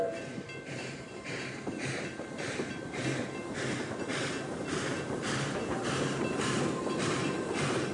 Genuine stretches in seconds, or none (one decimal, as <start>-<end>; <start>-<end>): 3.0-4.6